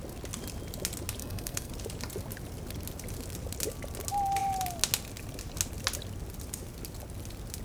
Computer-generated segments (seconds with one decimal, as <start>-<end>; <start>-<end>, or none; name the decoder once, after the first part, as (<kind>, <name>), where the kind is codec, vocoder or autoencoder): 1.2-1.7 (codec, SNAC)